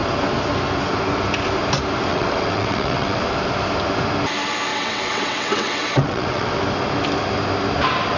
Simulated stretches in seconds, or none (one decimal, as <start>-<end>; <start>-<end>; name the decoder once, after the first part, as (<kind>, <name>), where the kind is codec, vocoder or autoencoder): 2.1-3.2 (vocoder, WaveNeXt); 4.7-6.5